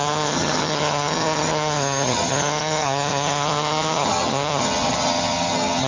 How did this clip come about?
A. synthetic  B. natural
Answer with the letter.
A